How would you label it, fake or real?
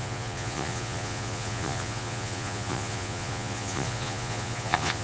fake